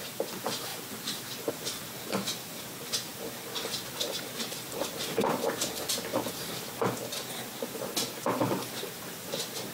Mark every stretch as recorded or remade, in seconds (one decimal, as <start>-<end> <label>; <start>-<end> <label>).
0.0-9.7 recorded